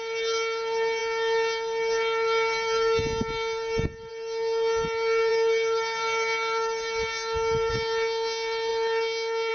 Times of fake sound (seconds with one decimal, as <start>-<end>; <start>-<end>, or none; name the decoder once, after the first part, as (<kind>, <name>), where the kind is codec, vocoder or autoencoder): none